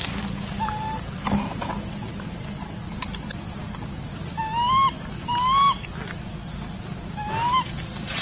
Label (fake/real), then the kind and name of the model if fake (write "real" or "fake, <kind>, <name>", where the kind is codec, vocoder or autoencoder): real